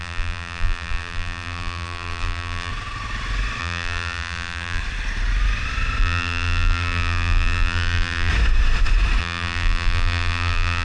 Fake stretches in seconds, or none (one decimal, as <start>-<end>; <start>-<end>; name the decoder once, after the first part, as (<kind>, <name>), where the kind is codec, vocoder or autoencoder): 0.0-2.7 (vocoder, BigVGAN v2); 3.6-4.8; 6.0-8.3; 9.2-10.8